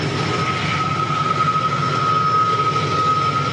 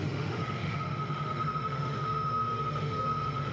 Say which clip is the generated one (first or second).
second